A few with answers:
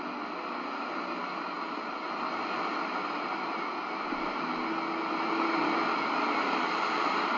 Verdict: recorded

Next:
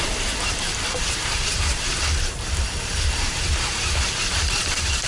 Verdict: remade